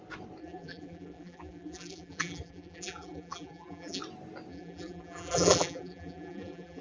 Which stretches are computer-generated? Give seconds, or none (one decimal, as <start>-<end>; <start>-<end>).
0.4-4.0; 4.5-6.8

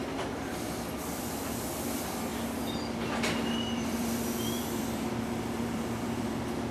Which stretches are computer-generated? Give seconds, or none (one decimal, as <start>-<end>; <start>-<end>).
0.0-2.3; 3.6-6.7

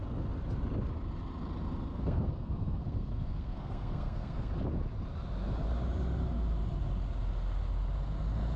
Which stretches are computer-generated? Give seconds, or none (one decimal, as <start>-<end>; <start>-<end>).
1.9-4.5

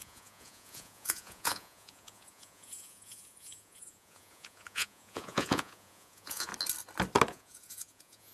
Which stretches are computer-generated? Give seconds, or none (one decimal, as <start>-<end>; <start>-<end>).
0.0-6.5; 7.3-8.3

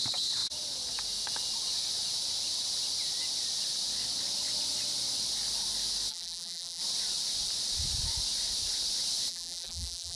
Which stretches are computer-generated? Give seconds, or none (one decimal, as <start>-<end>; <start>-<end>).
6.1-6.8; 9.3-10.2

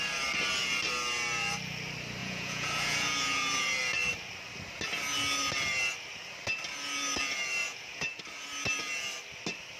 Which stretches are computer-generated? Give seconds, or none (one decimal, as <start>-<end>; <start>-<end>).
2.2-3.6; 7.6-8.2